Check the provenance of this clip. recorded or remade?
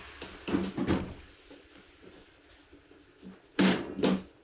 recorded